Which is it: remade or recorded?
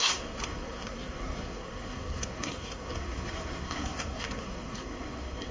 remade